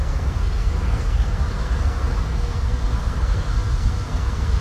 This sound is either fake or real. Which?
fake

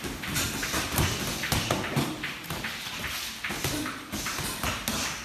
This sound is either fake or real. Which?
real